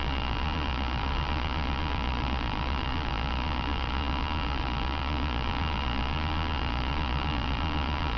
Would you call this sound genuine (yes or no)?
no